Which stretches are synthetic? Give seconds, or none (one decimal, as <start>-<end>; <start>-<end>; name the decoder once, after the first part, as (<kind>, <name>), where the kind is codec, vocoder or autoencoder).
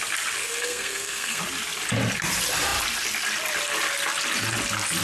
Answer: 0.4-1.4 (codec, SNAC)